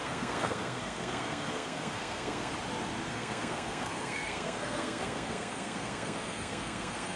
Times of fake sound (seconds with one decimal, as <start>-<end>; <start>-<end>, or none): 0.0-2.5; 3.1-7.2